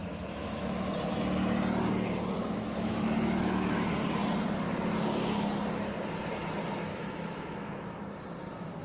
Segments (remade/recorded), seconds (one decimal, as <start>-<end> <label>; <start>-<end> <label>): 0.0-0.9 remade; 0.9-2.4 recorded; 2.4-3.9 remade; 3.9-6.9 recorded; 6.9-8.0 remade; 8.0-8.8 recorded